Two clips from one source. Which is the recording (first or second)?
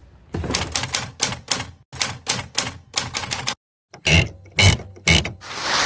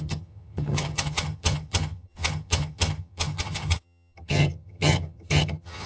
first